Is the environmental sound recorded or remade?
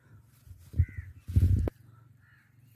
recorded